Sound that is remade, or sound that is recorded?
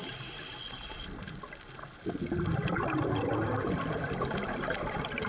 recorded